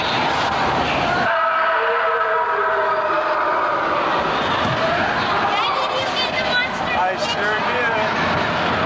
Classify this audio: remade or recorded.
recorded